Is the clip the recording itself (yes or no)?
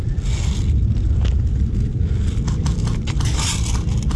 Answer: yes